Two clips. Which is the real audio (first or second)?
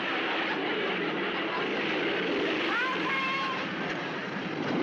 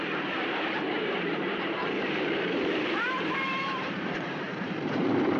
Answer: first